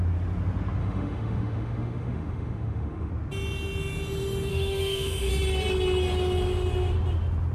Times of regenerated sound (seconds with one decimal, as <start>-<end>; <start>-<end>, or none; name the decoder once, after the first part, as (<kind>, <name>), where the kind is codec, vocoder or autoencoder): 0.8-3.1 (autoencoder, DAC-VAE); 4.5-5.3